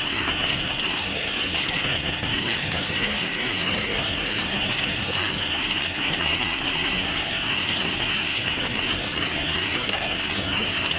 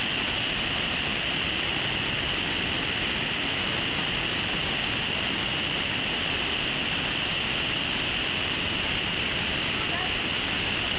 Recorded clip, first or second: second